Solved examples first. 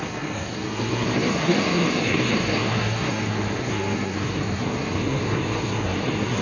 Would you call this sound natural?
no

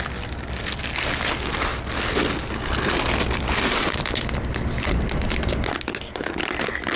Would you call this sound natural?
yes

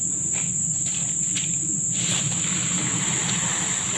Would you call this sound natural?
yes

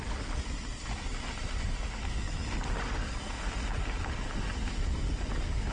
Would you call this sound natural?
yes